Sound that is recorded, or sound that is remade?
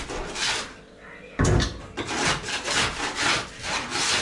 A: recorded